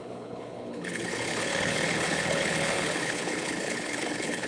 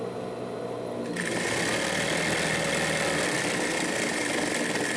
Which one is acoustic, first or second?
second